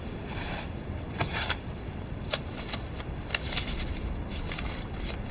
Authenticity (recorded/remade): recorded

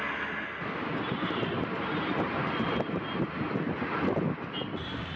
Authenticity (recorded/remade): recorded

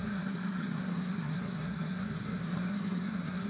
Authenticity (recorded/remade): remade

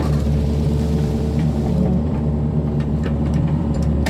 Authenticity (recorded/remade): remade